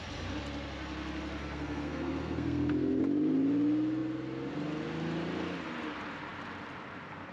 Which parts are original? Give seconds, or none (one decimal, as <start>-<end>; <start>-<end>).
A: 0.0-1.4; 3.0-7.3